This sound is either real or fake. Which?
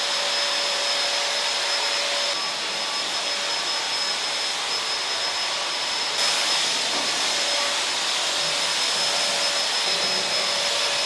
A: real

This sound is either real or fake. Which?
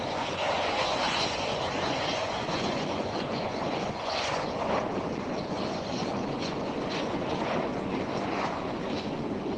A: fake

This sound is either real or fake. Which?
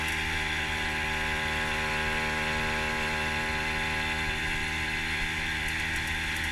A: real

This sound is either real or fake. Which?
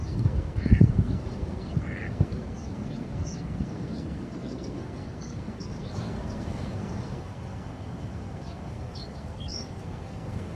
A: fake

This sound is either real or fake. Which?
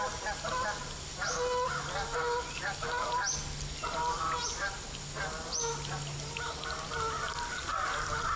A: real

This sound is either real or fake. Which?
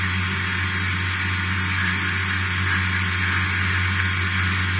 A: real